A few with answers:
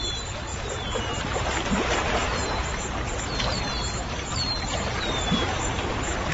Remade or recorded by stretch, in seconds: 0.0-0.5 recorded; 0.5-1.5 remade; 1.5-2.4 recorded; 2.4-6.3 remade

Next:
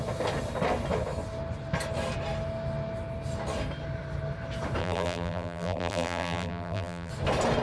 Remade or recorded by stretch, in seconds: 0.0-4.8 recorded; 4.8-7.1 remade; 7.1-7.6 recorded

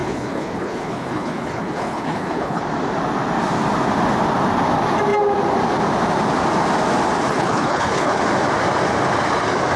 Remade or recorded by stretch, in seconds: 0.0-2.6 remade; 2.6-7.3 recorded; 7.3-8.2 remade; 8.2-9.8 recorded

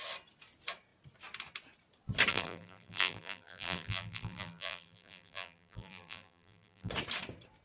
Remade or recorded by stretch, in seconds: 0.0-2.3 recorded; 2.3-6.9 remade; 6.9-7.6 recorded

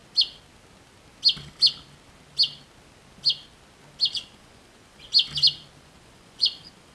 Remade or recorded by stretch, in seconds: 0.0-4.1 recorded; 4.1-5.1 remade; 5.1-5.8 recorded; 5.8-6.9 remade

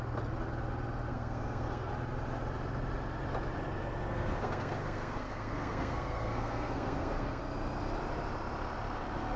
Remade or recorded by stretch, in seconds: 0.0-1.1 recorded; 1.1-1.9 remade; 1.9-4.1 recorded; 4.1-7.4 remade; 7.4-9.4 recorded

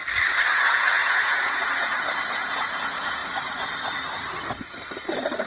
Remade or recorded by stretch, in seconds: 0.0-0.5 recorded; 0.5-3.2 remade; 3.2-5.5 recorded